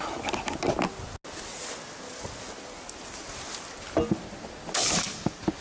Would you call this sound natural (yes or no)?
yes